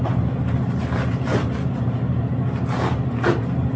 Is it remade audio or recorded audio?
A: recorded